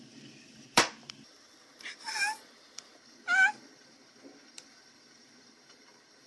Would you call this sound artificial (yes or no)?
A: yes